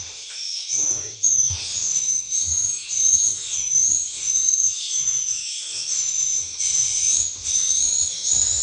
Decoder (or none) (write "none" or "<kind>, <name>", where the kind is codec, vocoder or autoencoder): autoencoder, DAC-VAE